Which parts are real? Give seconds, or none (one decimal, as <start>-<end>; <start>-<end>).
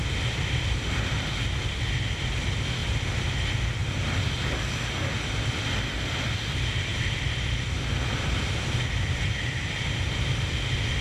0.0-2.8; 3.3-6.9; 10.3-11.0